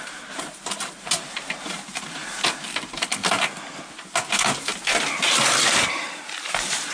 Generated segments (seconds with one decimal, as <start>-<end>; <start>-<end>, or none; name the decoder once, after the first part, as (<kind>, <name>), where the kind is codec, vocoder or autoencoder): 0.0-2.2 (vocoder, BigVGAN v2); 4.3-4.7; 5.6-6.9